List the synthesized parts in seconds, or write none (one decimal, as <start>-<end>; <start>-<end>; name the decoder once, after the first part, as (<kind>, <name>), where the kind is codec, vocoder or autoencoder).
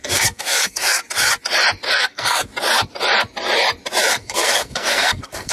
0.0-1.0 (codec, SNAC); 1.9-2.5; 4.1-5.5